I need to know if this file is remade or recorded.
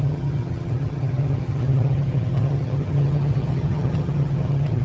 remade